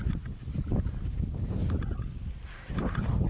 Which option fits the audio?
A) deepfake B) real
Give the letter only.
B